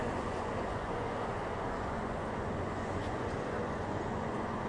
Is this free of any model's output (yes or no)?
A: no